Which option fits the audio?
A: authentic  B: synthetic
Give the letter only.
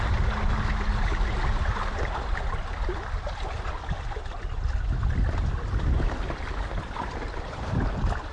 A